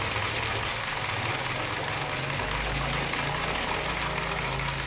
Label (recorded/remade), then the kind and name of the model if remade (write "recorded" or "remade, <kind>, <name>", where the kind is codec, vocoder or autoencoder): recorded